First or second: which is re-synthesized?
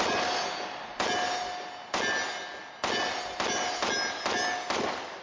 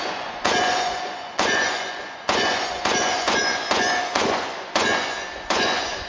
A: second